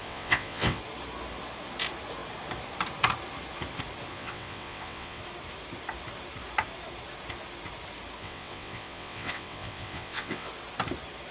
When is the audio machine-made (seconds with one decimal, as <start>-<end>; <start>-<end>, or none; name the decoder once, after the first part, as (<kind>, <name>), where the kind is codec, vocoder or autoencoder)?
0.0-0.8 (vocoder, WaveNeXt); 4.1-5.2; 8.2-10.5